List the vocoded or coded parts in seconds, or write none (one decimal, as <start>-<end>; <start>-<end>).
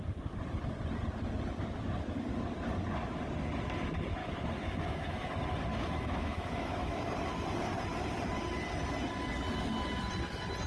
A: 4.2-5.3; 5.7-7.0